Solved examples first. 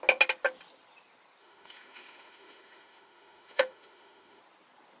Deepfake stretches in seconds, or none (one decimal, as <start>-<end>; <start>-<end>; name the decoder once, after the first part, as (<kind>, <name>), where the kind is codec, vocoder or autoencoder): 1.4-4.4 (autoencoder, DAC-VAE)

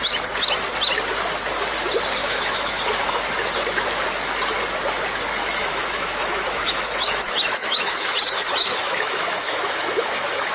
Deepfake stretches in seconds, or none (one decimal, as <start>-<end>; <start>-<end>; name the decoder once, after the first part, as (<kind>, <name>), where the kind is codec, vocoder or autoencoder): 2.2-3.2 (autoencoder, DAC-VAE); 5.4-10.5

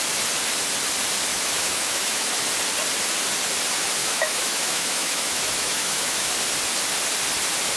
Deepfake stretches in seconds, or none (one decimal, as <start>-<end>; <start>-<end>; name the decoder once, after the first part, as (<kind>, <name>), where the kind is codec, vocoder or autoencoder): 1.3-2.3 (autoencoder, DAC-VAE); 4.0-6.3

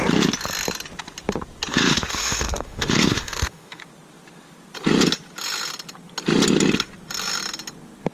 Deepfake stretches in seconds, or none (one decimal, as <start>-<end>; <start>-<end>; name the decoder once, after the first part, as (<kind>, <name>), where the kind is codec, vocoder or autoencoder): 1.7-3.8 (autoencoder, DAC-VAE)